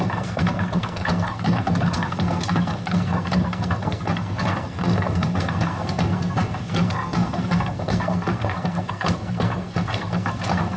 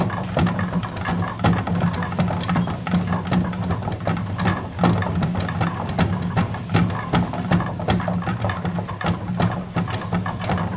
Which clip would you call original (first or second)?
second